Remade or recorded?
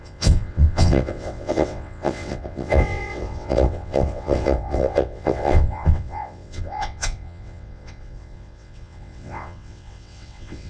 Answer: remade